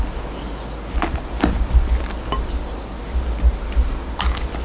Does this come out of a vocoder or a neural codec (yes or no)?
no